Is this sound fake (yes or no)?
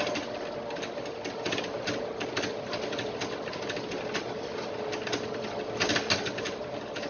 no